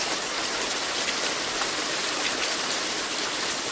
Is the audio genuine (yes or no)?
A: no